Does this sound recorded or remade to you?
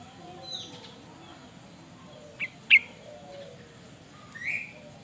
recorded